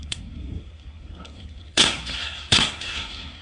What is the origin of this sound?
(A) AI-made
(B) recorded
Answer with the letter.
A